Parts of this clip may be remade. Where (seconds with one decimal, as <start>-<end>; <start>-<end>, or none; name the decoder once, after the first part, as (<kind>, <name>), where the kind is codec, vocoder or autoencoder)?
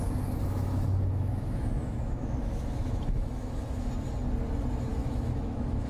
0.4-3.9 (autoencoder, DAC-VAE); 4.9-5.9